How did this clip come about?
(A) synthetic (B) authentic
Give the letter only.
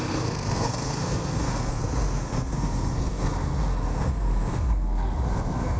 A